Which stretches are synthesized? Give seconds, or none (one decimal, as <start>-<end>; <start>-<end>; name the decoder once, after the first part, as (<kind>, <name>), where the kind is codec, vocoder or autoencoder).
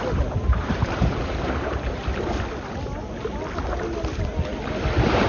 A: 0.5-2.0 (vocoder, BigVGAN v2)